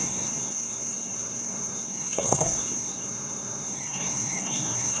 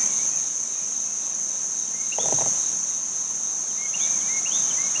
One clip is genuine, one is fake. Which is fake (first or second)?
first